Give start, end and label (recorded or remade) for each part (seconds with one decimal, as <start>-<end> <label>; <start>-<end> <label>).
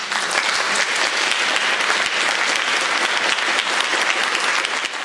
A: 0.0-5.0 recorded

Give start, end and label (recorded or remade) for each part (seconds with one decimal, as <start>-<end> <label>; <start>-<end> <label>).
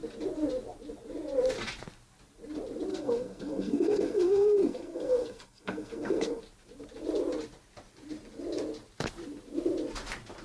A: 0.0-2.9 recorded; 2.9-6.4 remade; 6.4-10.4 recorded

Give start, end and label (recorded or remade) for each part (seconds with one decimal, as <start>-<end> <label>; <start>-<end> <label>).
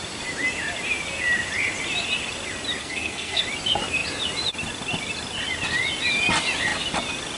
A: 0.0-2.8 recorded; 2.8-3.4 remade; 3.4-7.4 recorded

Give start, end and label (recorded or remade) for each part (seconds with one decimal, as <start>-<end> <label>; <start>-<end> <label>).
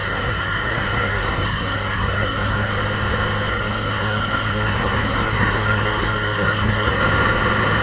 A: 0.0-2.7 remade; 2.7-3.5 recorded; 3.5-7.0 remade; 7.0-7.8 recorded